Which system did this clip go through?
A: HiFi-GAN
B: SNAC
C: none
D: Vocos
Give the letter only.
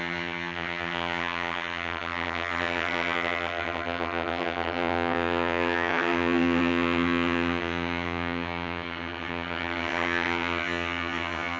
A